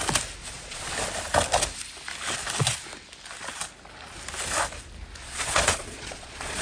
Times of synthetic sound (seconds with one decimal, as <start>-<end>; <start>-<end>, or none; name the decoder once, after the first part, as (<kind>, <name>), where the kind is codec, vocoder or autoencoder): 0.4-0.9 (vocoder, Vocos); 5.2-6.6